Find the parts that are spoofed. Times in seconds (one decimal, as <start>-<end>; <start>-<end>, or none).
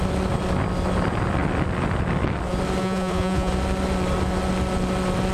2.8-3.5